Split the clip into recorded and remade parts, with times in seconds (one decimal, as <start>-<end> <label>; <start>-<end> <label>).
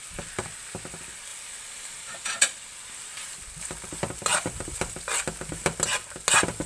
0.0-1.3 recorded; 1.3-3.4 remade; 3.4-4.3 recorded; 4.3-5.0 remade; 5.0-6.7 recorded